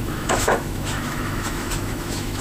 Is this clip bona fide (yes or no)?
no